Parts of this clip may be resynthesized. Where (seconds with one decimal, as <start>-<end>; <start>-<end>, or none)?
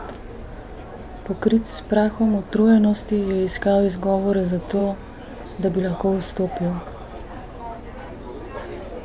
none